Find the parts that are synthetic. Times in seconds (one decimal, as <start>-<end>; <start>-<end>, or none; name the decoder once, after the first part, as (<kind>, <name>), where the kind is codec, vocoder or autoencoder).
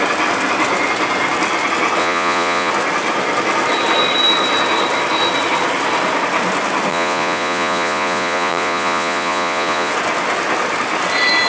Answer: 2.0-2.7 (vocoder, Vocos); 6.9-9.9